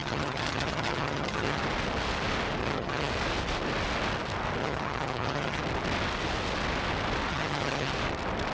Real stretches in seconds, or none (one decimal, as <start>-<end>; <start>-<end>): 1.6-2.6; 3.1-4.6; 5.6-7.3; 7.9-8.5

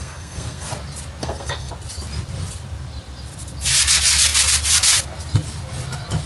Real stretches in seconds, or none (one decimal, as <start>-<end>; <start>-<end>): 0.7-1.2; 1.7-6.3

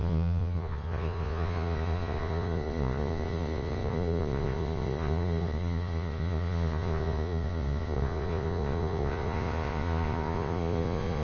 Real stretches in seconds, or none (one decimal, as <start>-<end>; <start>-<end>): none

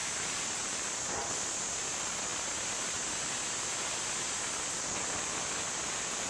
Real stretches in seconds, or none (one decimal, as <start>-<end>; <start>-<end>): 2.3-4.7